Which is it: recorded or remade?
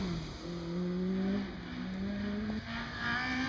recorded